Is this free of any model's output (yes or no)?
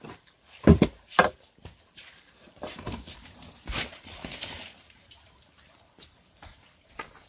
no